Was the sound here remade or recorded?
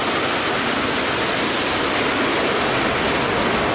recorded